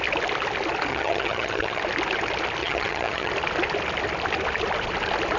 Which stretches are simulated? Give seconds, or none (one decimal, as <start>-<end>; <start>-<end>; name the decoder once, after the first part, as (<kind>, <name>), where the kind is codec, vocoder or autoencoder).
0.9-1.8 (vocoder, HiFi-GAN); 2.6-3.3